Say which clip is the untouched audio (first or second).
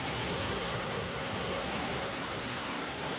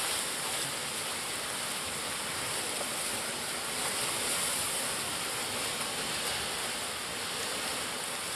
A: second